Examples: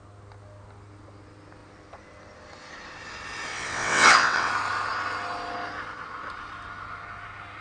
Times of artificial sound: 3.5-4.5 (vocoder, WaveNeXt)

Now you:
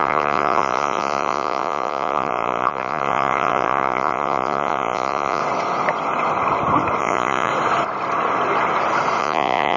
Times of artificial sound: 0.0-5.4 (vocoder, Vocos); 7.0-7.5; 9.2-9.8